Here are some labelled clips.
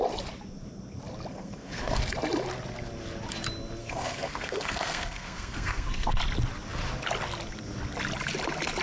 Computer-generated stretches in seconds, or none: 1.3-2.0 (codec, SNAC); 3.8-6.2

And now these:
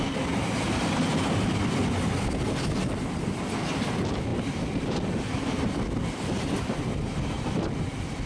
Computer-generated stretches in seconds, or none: none

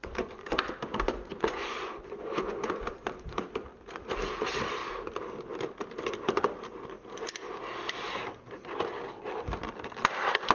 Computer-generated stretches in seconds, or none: 0.0-0.5 (vocoder, Vocos); 0.9-3.5